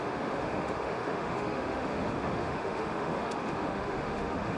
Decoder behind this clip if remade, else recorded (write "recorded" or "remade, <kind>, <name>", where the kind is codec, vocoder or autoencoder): remade, autoencoder, DAC-VAE